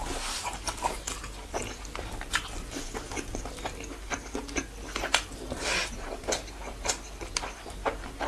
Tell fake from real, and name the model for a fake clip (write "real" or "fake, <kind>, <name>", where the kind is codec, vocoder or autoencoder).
real